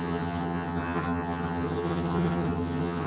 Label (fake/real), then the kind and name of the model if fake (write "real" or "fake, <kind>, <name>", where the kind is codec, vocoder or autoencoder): fake, vocoder, HiFi-GAN